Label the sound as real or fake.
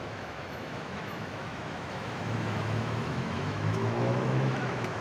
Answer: fake